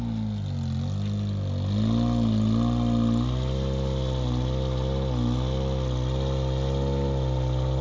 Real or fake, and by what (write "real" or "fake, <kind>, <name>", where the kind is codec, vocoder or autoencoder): real